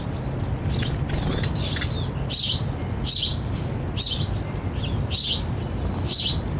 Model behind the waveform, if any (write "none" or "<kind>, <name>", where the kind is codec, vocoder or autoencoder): none